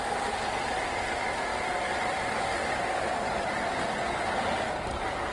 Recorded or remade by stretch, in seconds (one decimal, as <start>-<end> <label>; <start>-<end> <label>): 0.0-5.3 recorded